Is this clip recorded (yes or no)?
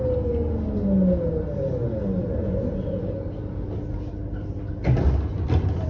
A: yes